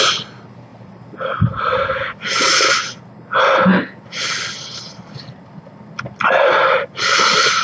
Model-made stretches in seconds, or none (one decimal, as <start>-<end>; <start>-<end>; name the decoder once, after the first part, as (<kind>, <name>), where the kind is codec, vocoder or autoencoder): 0.7-1.8 (vocoder, BigVGAN v2); 4.6-7.6